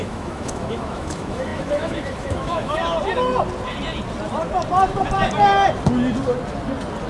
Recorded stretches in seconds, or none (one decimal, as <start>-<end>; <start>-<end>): 2.8-7.1